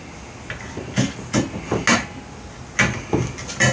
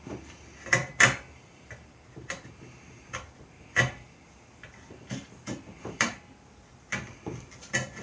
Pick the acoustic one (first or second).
first